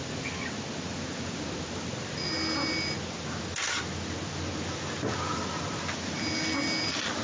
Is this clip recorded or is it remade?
recorded